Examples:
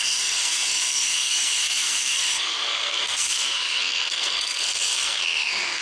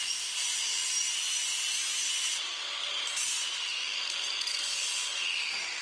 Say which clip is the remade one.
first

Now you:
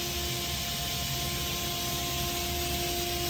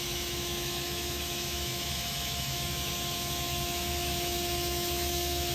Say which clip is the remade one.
second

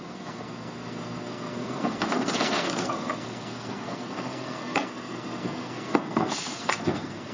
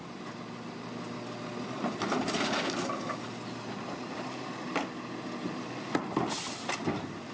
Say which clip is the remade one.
first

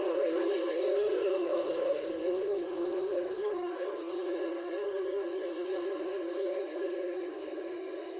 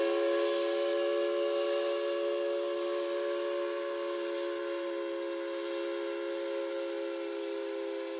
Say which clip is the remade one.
first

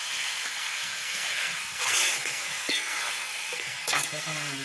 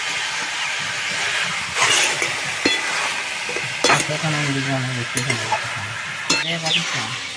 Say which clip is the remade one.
first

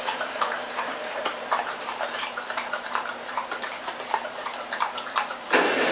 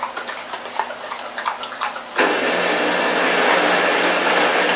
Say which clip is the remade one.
first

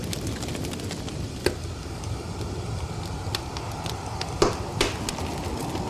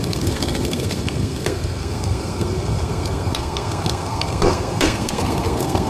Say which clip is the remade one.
second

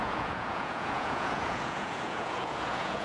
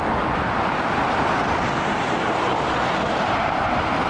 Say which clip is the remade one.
first